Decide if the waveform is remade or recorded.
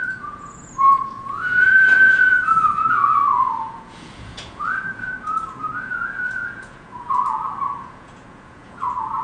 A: remade